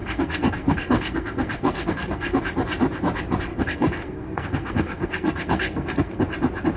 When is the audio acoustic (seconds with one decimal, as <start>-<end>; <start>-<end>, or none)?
2.4-3.5; 6.2-6.8